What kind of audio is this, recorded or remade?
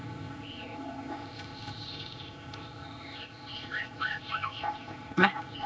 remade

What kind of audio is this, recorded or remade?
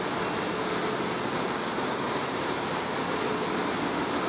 recorded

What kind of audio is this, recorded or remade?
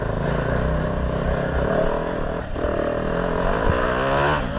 recorded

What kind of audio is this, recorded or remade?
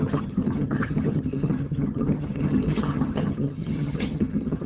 remade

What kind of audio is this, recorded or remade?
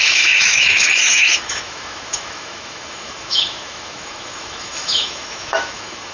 remade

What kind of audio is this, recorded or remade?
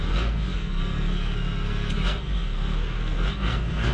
remade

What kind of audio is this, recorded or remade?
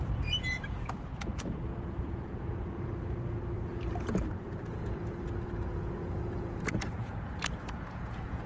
remade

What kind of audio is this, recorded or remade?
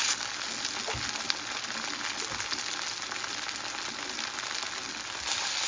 recorded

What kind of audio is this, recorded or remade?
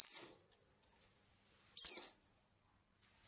recorded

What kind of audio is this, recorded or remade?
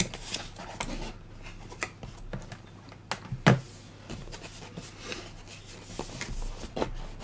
recorded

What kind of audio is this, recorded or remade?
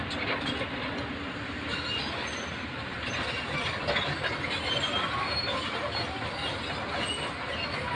recorded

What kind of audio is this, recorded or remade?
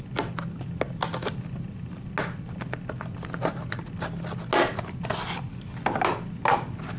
recorded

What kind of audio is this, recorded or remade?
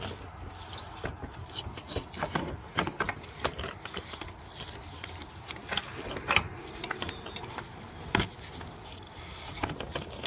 recorded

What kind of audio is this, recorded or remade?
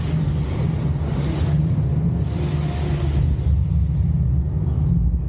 recorded